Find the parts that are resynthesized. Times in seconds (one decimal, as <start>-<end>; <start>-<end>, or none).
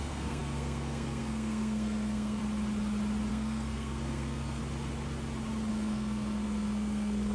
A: 0.0-2.4; 3.3-4.6; 5.7-7.3